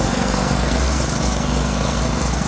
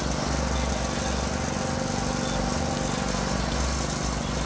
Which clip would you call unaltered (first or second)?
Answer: second